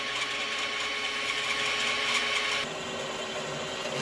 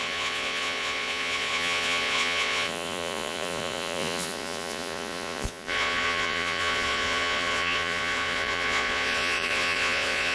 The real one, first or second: first